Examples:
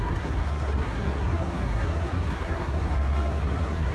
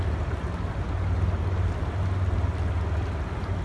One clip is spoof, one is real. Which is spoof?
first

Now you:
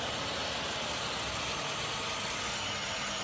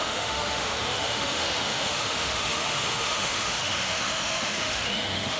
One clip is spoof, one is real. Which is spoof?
second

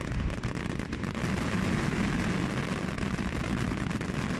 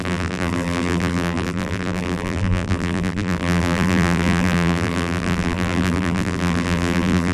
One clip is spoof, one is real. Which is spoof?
second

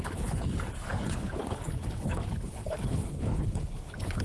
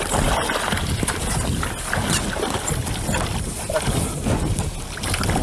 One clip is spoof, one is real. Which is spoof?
first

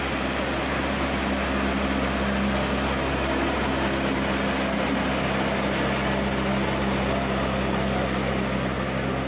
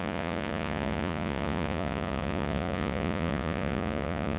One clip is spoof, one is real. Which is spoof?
second